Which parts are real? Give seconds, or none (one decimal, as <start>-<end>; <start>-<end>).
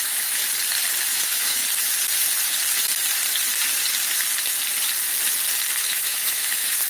0.4-1.1; 1.6-5.7